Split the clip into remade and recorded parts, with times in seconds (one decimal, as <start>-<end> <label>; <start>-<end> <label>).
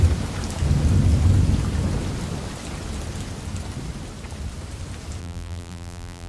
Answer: 0.0-5.2 recorded; 5.2-6.3 remade